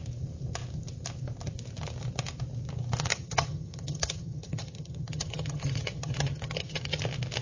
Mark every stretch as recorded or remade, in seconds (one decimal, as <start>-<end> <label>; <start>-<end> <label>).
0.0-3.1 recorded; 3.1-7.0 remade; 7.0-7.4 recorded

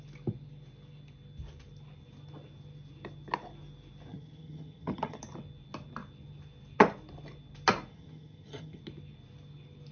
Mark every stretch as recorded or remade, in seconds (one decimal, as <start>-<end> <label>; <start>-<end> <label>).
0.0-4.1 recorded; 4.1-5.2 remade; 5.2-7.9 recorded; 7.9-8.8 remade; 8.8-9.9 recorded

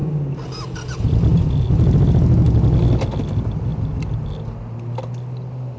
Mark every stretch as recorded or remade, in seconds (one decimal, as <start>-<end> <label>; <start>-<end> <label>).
0.0-5.8 recorded

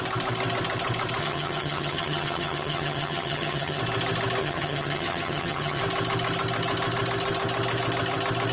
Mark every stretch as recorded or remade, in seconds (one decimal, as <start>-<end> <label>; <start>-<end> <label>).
0.0-1.2 recorded; 1.2-3.8 remade; 3.8-4.4 recorded; 4.4-5.8 remade; 5.8-8.5 recorded